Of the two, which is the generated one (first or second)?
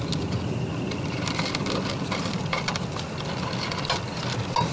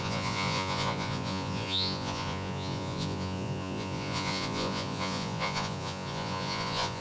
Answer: second